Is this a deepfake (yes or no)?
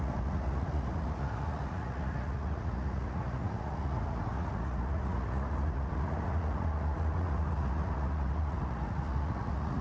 yes